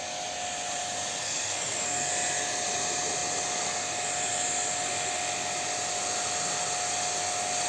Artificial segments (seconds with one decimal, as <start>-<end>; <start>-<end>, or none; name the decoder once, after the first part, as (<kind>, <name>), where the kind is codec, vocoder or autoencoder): 1.2-2.1 (codec, SNAC)